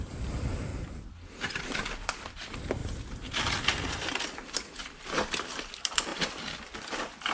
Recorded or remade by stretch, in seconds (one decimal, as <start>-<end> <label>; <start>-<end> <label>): 0.0-0.7 remade; 0.7-1.5 recorded; 1.5-6.1 remade; 6.1-6.8 recorded; 6.8-7.3 remade